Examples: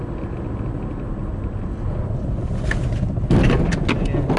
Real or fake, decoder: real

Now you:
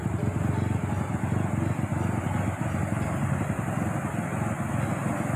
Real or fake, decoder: real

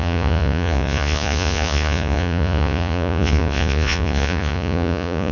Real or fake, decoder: fake, vocoder, Vocos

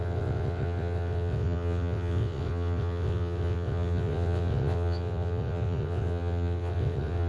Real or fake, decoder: fake, vocoder, WaveNeXt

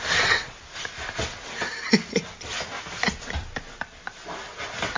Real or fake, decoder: real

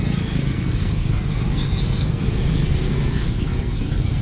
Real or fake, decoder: fake, codec, SNAC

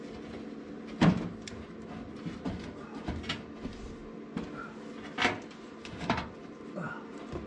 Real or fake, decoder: real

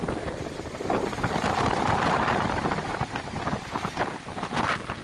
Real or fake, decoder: fake, vocoder, BigVGAN v2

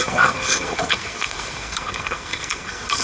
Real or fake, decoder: fake, codec, SNAC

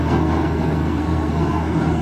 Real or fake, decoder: fake, codec, SNAC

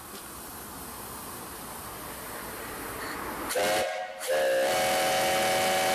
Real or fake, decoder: real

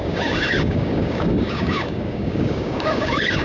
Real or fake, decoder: fake, codec, DAC